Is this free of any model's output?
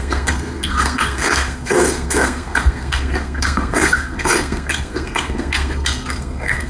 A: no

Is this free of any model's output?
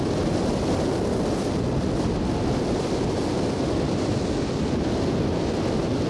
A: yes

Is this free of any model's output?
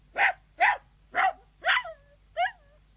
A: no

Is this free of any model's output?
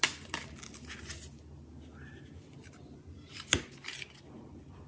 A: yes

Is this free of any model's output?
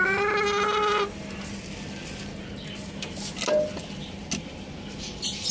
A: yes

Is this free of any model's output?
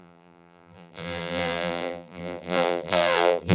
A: no